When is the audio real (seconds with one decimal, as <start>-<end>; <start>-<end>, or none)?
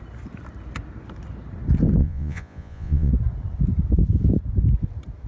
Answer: 0.0-2.0; 3.1-5.3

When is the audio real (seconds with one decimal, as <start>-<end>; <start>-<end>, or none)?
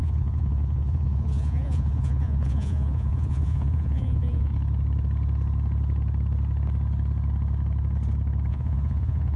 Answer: 4.5-8.5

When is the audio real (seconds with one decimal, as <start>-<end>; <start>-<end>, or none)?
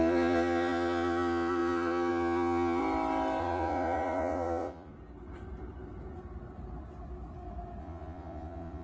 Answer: 2.8-3.4; 4.9-7.8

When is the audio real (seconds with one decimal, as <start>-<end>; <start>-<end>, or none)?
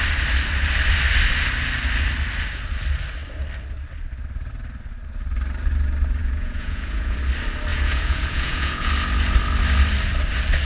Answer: 0.0-6.2; 7.2-7.7; 8.9-10.6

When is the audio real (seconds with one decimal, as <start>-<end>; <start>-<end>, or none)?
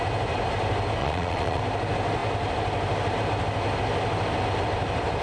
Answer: 0.0-1.0; 1.6-5.2